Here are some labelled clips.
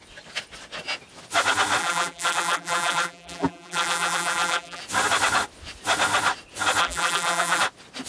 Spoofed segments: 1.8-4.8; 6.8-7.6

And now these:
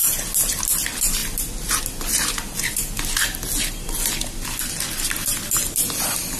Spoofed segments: none

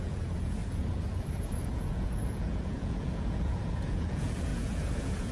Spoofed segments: 0.0-5.3